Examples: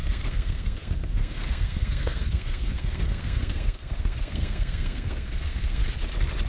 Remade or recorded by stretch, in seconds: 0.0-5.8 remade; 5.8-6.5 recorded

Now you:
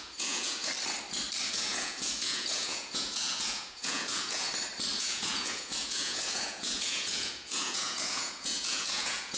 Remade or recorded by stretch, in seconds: 0.0-0.7 remade; 0.7-1.5 recorded; 1.5-4.5 remade; 4.5-5.0 recorded; 5.0-9.4 remade